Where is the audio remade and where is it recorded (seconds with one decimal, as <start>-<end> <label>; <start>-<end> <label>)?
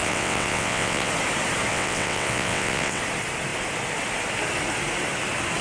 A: 0.0-1.1 remade; 1.1-1.7 recorded; 1.7-3.0 remade; 3.0-5.6 recorded